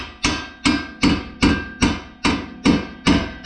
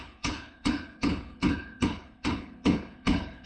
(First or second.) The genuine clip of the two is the first